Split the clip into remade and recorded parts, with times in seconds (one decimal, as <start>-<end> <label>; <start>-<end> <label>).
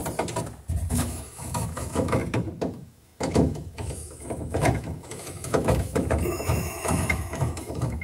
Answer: 0.0-0.9 recorded; 0.9-2.2 remade; 2.2-2.7 recorded; 2.7-8.0 remade